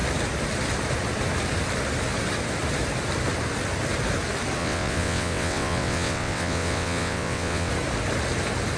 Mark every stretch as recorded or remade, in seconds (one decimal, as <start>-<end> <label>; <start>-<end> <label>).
0.0-4.6 recorded; 4.6-7.7 remade; 7.7-8.8 recorded